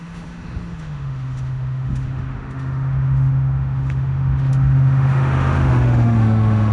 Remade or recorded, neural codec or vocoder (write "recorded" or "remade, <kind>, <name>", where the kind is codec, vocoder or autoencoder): remade, autoencoder, DAC-VAE